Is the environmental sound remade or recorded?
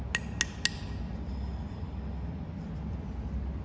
recorded